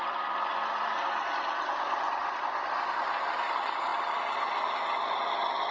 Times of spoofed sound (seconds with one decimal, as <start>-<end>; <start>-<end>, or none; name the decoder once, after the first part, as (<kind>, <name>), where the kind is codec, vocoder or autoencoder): 0.0-2.2 (vocoder, BigVGAN v2); 2.7-3.9; 5.1-5.7